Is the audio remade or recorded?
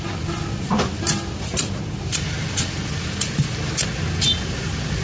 recorded